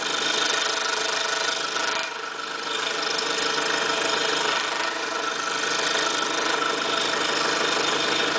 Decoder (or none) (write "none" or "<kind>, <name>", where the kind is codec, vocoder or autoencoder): none